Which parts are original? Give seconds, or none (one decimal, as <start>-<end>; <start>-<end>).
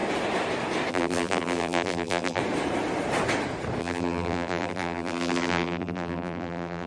0.0-0.9; 2.4-3.8